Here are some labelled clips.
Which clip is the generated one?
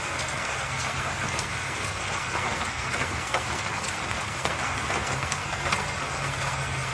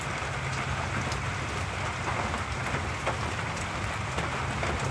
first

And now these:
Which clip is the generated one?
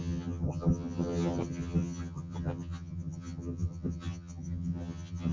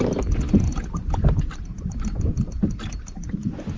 first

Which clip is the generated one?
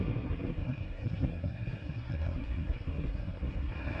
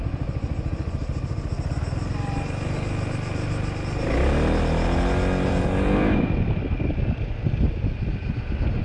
first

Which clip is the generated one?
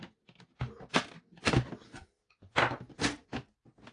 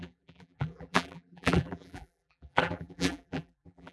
second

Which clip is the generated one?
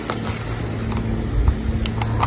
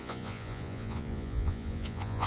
second